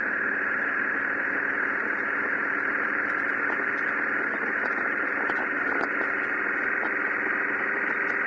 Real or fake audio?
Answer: real